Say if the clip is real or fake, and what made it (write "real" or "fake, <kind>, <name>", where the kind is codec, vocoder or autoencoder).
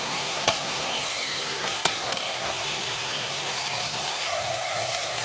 fake, codec, SNAC